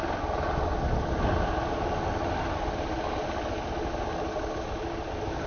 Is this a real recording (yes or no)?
yes